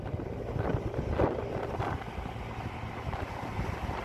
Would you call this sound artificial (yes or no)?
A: no